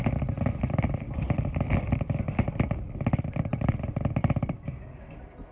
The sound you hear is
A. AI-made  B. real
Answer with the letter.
A